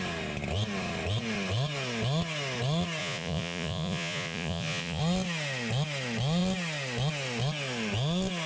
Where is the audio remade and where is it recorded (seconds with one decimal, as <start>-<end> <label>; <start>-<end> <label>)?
0.0-3.0 recorded; 3.0-5.0 remade; 5.0-8.5 recorded